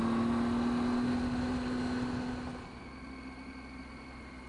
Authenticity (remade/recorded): recorded